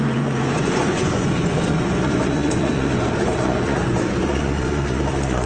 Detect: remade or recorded remade